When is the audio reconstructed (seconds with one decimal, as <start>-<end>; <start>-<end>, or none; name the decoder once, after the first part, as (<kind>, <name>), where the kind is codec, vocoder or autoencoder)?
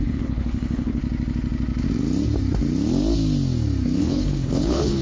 0.0-1.0 (codec, HILCodec); 4.0-5.0